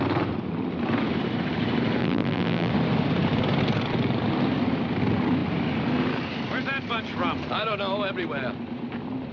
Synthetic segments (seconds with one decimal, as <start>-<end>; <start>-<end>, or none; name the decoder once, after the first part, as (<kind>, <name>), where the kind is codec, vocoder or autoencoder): 2.0-2.7 (vocoder, BigVGAN v2)